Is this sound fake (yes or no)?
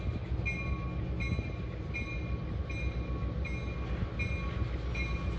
no